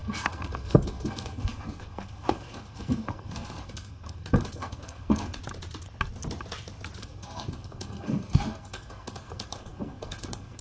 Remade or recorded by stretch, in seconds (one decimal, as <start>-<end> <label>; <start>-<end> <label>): 0.0-5.4 remade; 5.4-7.0 recorded; 7.0-10.6 remade